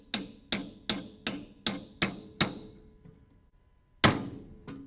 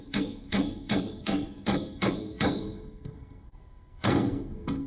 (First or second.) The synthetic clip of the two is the second